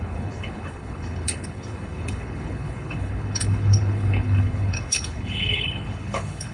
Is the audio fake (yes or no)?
yes